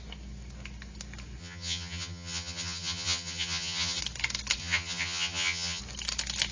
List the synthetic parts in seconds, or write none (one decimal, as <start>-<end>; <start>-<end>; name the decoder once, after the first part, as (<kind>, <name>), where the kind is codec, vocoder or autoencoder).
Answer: 1.4-4.0 (vocoder, HiFi-GAN); 4.6-5.8